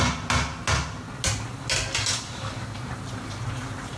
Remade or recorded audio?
recorded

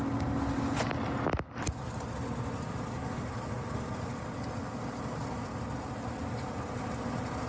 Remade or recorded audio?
recorded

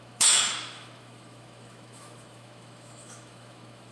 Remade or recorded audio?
remade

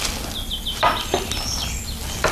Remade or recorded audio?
recorded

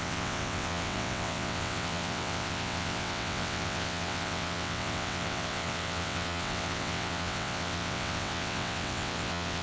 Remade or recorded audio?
remade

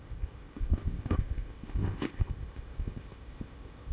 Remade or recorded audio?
remade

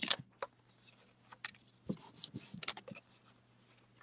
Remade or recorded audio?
recorded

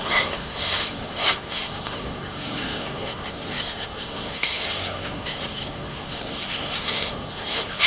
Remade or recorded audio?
remade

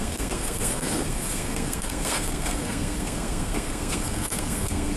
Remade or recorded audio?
remade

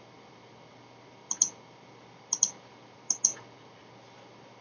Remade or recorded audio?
recorded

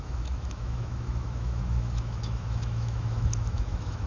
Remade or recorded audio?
remade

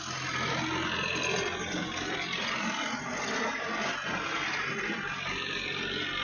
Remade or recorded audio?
recorded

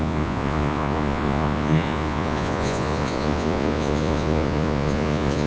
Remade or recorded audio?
remade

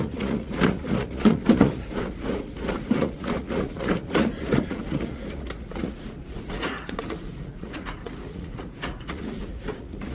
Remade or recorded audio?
remade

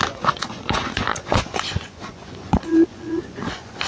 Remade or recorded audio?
remade